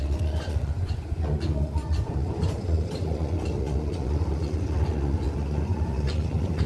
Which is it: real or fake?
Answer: fake